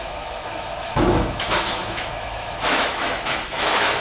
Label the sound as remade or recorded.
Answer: remade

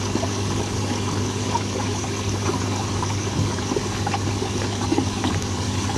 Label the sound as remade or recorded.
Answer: remade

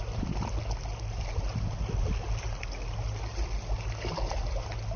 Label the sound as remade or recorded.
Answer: recorded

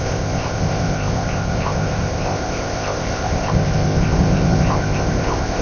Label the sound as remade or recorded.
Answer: remade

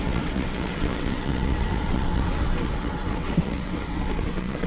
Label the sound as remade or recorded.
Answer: remade